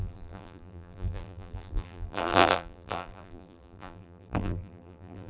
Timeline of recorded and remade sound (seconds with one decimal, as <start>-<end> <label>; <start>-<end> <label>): 0.0-5.3 remade